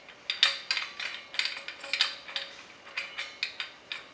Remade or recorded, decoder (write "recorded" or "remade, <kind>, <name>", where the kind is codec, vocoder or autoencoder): recorded